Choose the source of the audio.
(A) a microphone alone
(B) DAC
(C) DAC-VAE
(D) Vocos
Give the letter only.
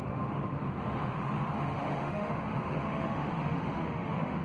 C